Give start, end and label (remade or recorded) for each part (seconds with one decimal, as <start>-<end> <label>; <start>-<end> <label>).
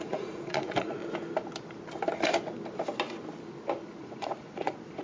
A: 0.0-1.0 remade; 1.0-4.0 recorded; 4.0-5.0 remade